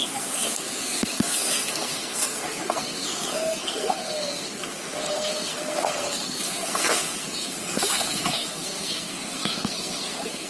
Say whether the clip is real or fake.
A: fake